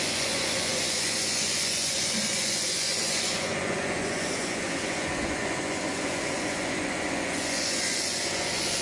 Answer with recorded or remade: remade